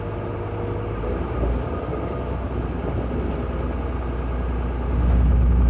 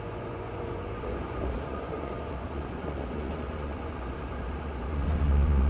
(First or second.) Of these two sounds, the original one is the first